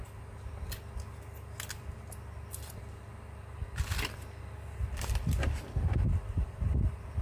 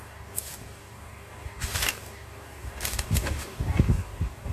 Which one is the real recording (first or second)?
first